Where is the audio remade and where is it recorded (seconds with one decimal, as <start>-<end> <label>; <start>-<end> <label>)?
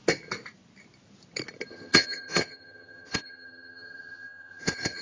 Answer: 0.0-1.7 recorded; 1.7-5.0 remade